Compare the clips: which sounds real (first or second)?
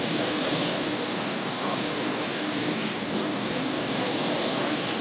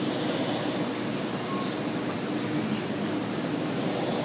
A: second